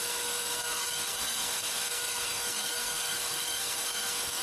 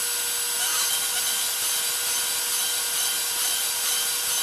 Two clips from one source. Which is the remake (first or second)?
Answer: first